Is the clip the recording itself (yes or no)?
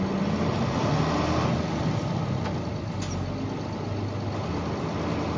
yes